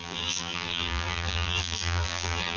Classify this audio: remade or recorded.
remade